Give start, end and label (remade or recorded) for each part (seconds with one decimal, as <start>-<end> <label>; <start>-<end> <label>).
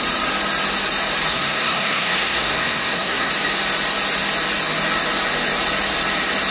0.0-1.3 recorded; 1.3-3.3 remade; 3.3-6.5 recorded